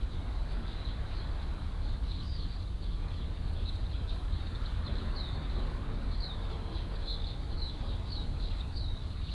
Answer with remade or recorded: remade